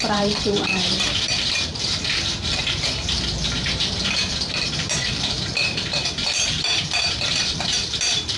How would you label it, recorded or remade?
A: remade